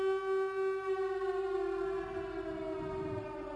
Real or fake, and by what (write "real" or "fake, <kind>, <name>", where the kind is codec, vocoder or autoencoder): real